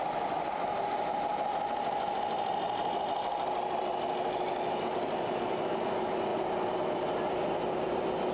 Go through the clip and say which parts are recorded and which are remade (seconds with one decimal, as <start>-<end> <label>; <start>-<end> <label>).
0.0-8.3 recorded